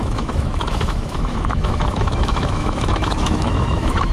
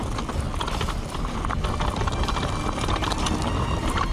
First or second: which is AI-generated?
first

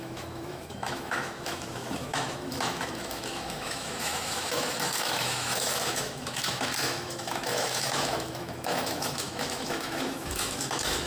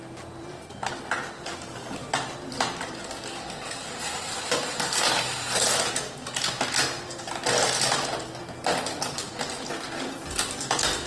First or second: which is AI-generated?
first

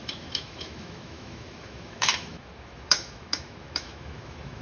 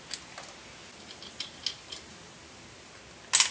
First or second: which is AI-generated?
first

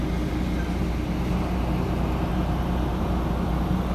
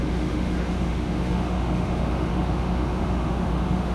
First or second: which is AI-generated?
second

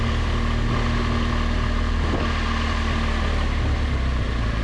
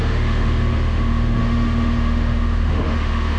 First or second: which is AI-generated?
second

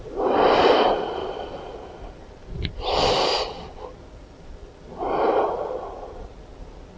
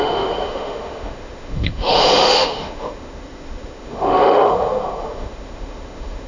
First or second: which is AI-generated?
second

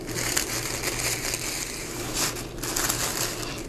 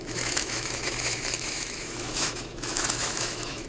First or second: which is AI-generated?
second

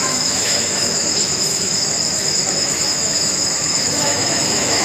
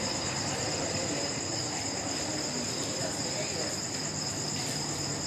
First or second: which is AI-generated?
first